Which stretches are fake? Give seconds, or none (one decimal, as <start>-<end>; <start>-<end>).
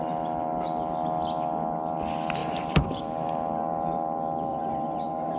2.4-3.0; 4.5-5.4